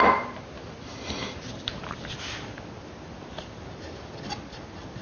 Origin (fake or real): real